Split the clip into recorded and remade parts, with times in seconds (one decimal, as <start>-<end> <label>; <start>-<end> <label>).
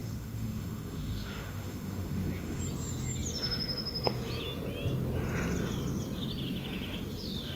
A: 0.0-2.6 remade; 2.6-7.6 recorded